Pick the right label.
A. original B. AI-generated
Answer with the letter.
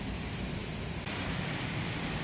A